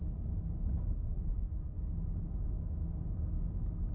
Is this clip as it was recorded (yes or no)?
no